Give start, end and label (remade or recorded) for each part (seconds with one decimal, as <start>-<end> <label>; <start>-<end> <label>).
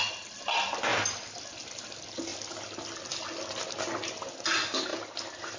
0.0-0.9 recorded; 0.9-1.5 remade; 1.5-4.9 recorded; 4.9-5.6 remade